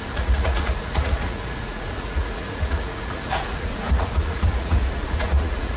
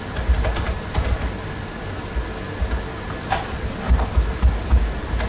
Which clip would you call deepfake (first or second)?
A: first